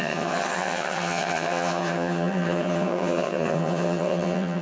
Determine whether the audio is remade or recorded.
remade